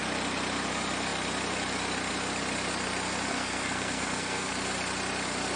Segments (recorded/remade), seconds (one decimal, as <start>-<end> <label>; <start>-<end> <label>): 0.0-3.3 recorded; 3.3-4.5 remade; 4.5-5.6 recorded